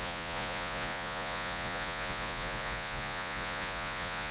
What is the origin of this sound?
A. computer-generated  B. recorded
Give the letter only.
A